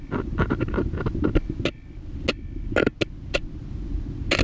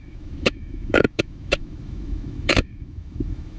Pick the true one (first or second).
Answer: first